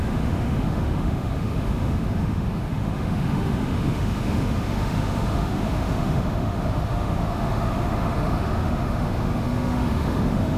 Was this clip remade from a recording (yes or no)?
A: yes